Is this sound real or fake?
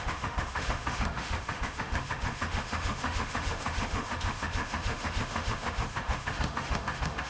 fake